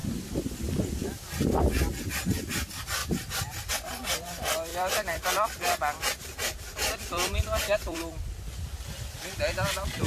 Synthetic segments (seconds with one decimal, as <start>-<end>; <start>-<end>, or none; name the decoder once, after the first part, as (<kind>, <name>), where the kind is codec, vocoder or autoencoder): 0.0-0.5 (vocoder, BigVGAN v2); 3.0-3.7; 4.7-8.9